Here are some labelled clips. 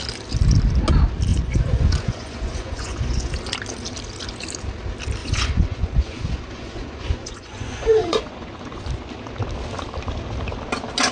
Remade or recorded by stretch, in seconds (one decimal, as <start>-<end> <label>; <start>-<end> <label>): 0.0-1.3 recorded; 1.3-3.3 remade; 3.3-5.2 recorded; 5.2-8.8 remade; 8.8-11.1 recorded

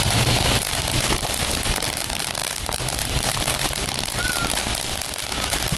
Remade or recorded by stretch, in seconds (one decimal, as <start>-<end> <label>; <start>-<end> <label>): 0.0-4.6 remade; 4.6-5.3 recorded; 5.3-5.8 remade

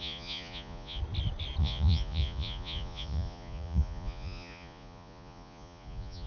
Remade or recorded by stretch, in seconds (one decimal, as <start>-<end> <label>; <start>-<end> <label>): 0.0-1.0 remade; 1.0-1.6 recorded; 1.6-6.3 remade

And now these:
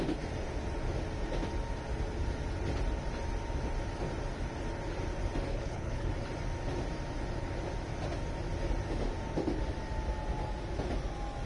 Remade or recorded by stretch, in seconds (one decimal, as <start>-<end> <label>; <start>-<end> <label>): 0.0-5.5 recorded; 5.5-6.1 remade; 6.1-11.5 recorded

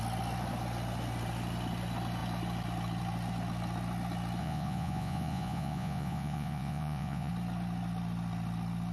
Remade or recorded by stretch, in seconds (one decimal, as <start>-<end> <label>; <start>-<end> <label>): 0.0-4.4 recorded; 4.4-7.3 remade; 7.3-8.9 recorded